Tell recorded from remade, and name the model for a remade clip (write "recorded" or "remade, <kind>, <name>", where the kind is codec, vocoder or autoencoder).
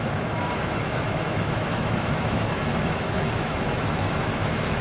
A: remade, autoencoder, DAC-VAE